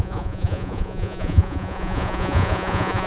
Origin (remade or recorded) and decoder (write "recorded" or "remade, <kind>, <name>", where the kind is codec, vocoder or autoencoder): remade, vocoder, Vocos